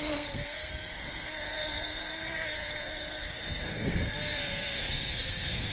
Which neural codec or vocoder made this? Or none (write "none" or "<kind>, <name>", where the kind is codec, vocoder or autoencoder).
codec, SNAC